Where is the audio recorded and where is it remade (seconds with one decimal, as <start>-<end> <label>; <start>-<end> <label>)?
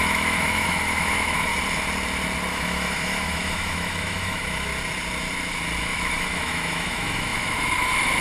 0.0-1.5 remade; 1.5-2.5 recorded; 2.5-4.7 remade; 4.7-5.8 recorded; 5.8-8.2 remade